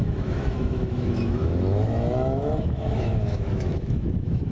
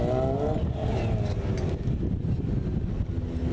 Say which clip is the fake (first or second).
first